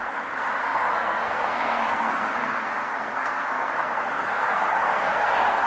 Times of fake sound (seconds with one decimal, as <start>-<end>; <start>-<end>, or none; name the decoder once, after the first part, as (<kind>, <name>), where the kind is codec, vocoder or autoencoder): 0.0-5.7 (codec, SNAC)

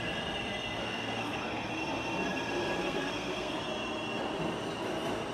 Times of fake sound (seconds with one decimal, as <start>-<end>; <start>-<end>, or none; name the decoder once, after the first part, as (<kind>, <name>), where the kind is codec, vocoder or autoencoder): 0.8-1.4 (codec, SNAC); 2.8-3.5